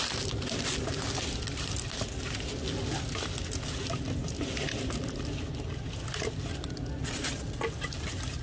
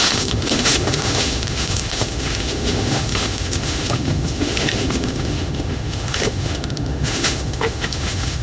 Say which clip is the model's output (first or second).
second